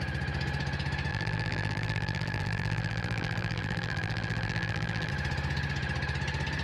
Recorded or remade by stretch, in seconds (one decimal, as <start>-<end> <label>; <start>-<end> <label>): 0.0-1.1 recorded; 1.1-5.1 remade; 5.1-6.6 recorded